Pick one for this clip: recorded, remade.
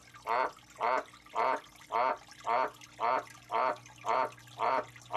recorded